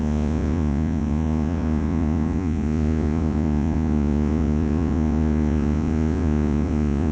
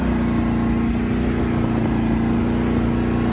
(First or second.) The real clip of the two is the second